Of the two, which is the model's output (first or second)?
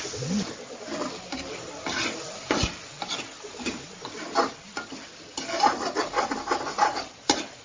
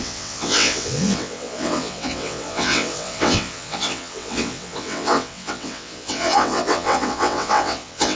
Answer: second